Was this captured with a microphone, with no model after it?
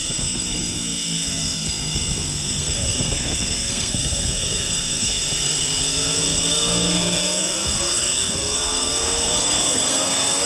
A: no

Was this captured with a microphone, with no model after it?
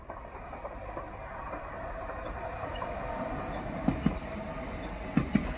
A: yes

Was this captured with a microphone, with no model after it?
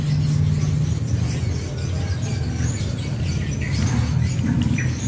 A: yes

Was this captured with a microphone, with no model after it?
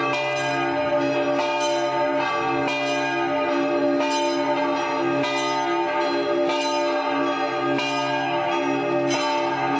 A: yes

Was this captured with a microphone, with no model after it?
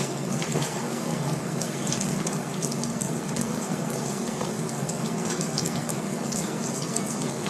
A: no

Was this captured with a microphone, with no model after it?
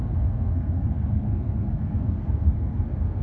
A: no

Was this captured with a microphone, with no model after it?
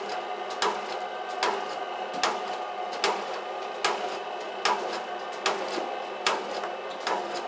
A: yes